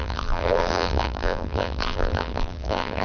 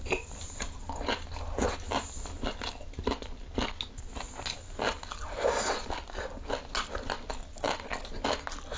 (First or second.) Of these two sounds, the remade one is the first